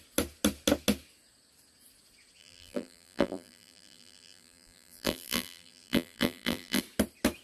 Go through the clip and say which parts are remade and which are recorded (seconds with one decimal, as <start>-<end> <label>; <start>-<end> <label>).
0.0-2.4 recorded; 2.4-6.8 remade; 6.8-7.4 recorded